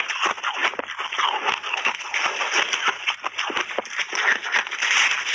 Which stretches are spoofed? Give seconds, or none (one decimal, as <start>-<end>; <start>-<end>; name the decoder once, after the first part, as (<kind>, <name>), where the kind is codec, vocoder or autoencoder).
none